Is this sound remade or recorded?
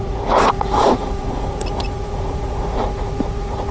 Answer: remade